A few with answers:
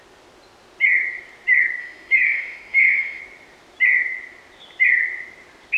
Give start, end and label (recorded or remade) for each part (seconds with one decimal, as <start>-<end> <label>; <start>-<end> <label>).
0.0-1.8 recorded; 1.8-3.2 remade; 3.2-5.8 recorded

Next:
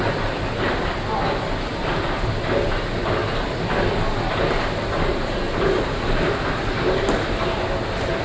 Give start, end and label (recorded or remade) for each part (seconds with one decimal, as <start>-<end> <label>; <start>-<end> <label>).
0.0-8.2 recorded

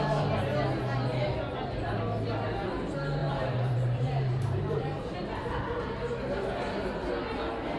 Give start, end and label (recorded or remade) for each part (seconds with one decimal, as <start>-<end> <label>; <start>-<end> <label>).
0.0-3.2 recorded; 3.2-5.8 remade; 5.8-7.8 recorded

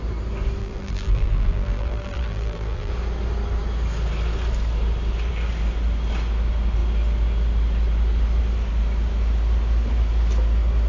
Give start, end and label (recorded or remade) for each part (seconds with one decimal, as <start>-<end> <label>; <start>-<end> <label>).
0.0-0.6 recorded; 0.6-2.9 remade; 2.9-10.9 recorded

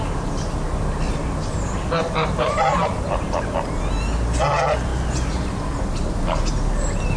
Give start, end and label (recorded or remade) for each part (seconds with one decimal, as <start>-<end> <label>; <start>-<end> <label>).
0.0-2.0 recorded; 2.0-2.9 remade; 2.9-7.2 recorded

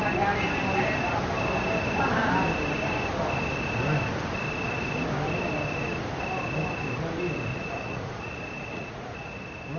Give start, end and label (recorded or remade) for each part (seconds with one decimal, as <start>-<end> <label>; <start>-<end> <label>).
0.0-7.5 recorded; 7.5-9.4 remade; 9.4-9.8 recorded